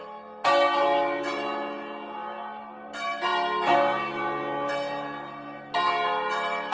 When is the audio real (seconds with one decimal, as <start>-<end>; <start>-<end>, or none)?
0.0-6.7